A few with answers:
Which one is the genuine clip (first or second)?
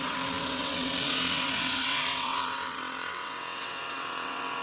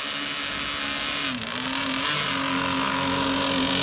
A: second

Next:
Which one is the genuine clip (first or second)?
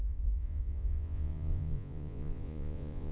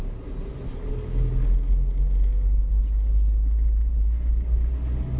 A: second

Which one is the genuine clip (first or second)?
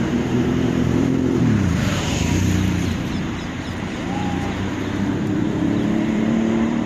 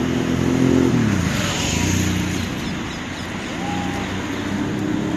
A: second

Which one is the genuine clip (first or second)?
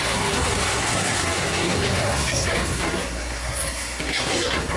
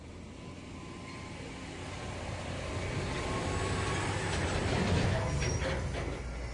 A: second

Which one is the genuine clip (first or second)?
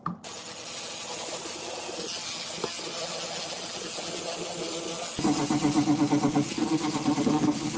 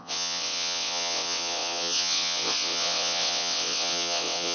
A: first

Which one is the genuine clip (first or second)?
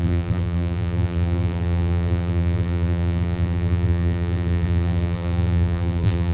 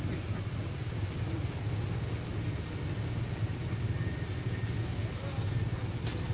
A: second